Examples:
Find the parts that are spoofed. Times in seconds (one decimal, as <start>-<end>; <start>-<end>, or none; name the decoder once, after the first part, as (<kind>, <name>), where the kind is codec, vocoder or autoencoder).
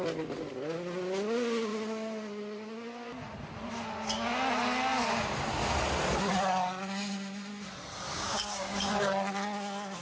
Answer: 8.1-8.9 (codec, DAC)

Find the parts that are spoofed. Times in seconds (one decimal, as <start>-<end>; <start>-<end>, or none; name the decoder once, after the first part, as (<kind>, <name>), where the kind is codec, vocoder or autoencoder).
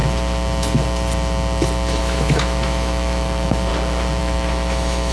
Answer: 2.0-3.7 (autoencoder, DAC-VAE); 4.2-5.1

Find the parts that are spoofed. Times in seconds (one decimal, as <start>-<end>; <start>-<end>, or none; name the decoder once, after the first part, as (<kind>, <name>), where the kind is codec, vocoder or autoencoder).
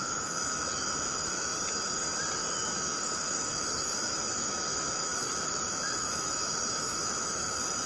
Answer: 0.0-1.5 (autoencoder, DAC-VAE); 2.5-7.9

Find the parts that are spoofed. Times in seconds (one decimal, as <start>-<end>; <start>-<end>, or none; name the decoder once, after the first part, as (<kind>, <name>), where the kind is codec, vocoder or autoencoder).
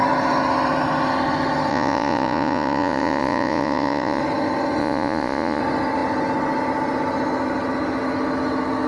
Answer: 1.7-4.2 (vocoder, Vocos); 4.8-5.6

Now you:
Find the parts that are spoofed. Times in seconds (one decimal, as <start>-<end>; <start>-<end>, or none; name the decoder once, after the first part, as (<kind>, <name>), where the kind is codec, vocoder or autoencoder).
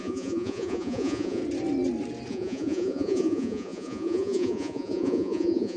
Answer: 0.0-1.4 (vocoder, Vocos); 2.3-5.8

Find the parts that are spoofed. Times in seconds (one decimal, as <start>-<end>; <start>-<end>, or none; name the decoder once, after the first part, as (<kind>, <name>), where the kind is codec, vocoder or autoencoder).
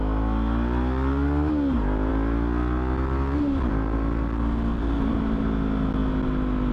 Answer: none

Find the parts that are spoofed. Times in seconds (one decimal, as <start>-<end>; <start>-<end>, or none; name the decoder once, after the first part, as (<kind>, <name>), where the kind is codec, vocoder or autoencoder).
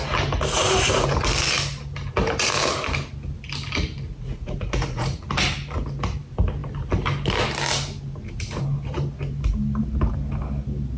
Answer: 4.1-5.2 (vocoder, Vocos)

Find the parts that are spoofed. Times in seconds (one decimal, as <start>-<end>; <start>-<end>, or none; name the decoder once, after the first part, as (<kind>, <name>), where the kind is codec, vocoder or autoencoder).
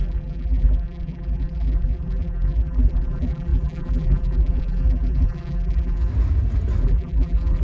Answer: 0.0-6.1 (vocoder, BigVGAN v2); 6.8-7.6